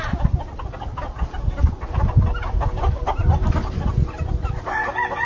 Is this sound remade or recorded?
recorded